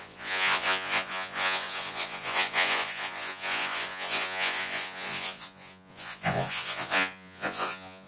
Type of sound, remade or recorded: remade